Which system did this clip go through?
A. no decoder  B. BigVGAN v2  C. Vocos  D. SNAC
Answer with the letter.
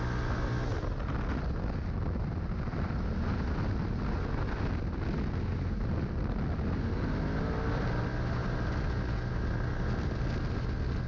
A